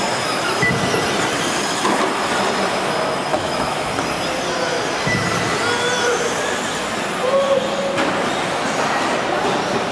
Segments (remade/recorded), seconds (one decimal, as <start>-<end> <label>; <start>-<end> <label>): 0.0-3.3 recorded; 3.3-3.9 remade; 3.9-9.9 recorded